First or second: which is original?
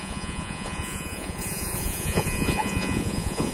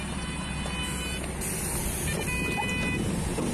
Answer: second